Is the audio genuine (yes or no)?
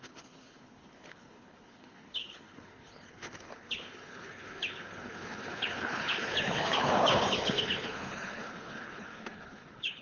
no